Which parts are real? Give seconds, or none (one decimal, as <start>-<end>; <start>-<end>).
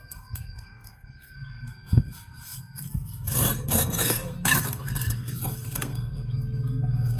none